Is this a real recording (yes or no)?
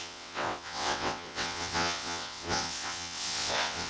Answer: no